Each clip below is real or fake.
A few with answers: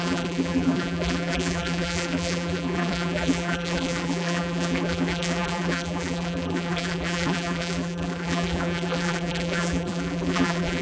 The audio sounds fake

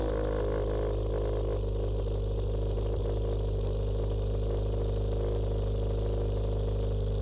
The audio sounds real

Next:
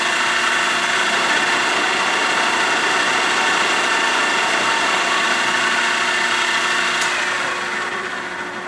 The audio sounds real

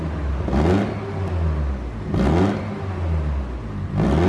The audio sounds real